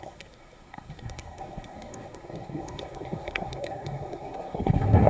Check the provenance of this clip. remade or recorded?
remade